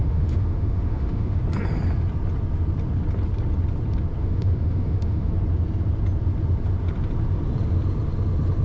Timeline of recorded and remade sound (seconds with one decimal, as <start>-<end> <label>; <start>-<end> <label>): 0.0-1.4 remade; 1.4-4.2 recorded; 4.2-5.3 remade; 5.3-8.6 recorded